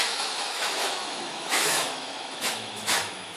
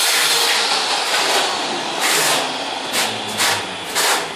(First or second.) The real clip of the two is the second